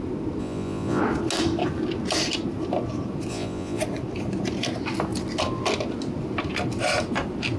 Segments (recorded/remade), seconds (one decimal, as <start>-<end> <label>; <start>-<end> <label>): 0.0-0.4 recorded; 0.4-1.0 remade; 1.0-3.3 recorded; 3.3-3.8 remade; 3.8-7.6 recorded

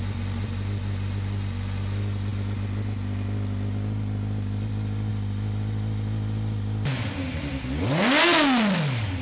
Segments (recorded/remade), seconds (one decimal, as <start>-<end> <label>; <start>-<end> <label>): 0.0-9.2 recorded

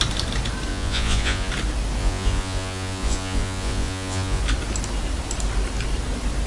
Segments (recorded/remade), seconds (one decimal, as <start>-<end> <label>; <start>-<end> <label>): 0.0-0.7 recorded; 0.7-1.5 remade; 1.5-2.0 recorded; 2.0-4.4 remade; 4.4-6.5 recorded

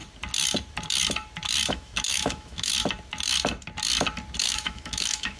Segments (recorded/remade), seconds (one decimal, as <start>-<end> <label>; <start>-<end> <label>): 0.0-1.7 recorded; 1.7-2.7 remade; 2.7-4.4 recorded; 4.4-5.4 remade

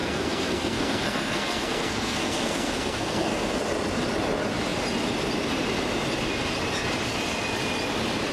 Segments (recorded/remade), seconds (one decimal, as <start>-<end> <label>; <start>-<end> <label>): 0.0-3.6 remade; 3.6-8.3 recorded